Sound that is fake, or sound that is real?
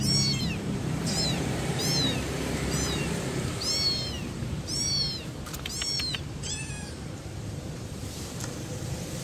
fake